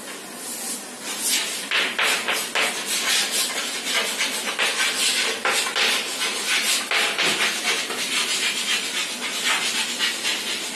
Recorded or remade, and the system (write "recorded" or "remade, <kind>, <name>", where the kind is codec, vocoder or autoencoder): recorded